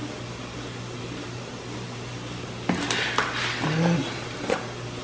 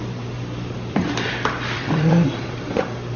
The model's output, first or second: second